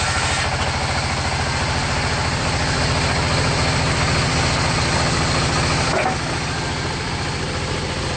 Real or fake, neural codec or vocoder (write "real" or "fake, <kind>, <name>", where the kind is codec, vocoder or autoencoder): real